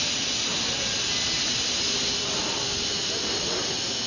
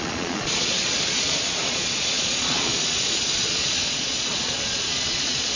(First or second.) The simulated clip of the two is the second